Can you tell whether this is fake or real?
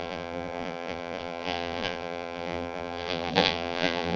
fake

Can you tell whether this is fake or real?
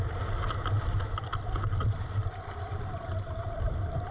fake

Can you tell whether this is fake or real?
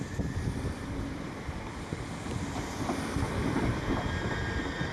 fake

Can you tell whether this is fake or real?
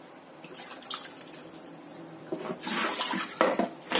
real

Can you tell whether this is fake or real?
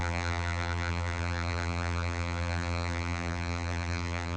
fake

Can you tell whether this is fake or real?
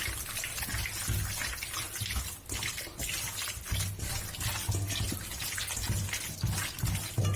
real